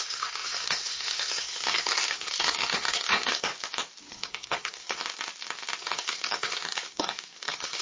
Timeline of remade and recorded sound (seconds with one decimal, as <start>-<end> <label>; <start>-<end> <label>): 0.0-3.5 remade; 3.5-4.1 recorded; 4.1-5.0 remade; 5.0-5.8 recorded; 5.8-7.8 remade